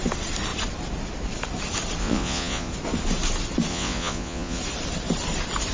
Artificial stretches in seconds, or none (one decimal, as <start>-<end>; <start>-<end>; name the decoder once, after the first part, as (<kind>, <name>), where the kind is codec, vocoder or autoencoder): 2.0-2.7 (vocoder, Vocos); 3.7-4.6